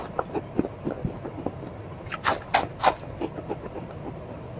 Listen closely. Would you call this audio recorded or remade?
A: remade